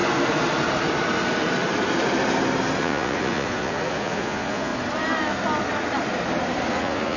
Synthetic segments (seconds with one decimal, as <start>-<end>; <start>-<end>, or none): 2.8-4.7; 6.7-7.2

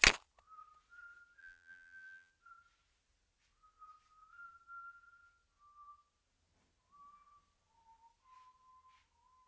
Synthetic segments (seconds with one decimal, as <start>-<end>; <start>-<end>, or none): 1.4-2.3

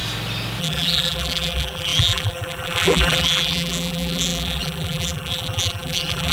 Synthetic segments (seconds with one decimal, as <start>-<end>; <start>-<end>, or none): 0.6-6.3

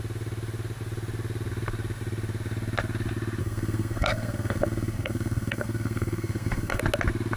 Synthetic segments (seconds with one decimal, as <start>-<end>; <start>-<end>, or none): 3.4-6.8

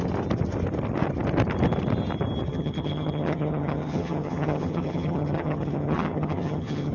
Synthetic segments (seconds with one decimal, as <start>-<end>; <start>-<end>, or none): 2.5-6.9

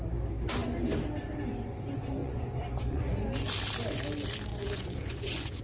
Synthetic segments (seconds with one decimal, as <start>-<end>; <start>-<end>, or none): 2.2-3.1; 4.5-5.6

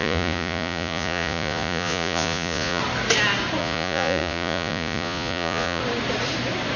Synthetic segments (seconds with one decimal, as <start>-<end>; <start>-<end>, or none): 0.0-2.8; 3.6-5.8

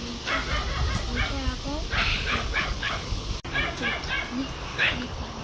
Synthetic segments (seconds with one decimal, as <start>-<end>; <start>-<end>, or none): 2.1-3.3; 4.7-5.4